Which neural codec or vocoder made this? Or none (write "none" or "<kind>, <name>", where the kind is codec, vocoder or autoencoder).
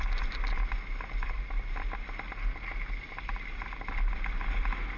none